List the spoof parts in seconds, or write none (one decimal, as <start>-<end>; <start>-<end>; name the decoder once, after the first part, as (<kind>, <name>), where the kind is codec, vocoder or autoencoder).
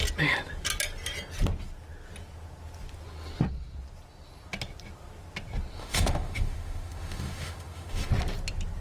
5.8-8.1 (autoencoder, DAC-VAE)